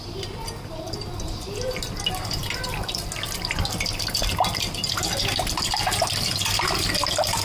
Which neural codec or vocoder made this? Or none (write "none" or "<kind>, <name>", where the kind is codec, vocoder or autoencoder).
none